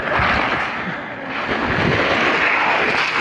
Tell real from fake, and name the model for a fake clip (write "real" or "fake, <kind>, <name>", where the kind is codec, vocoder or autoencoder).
real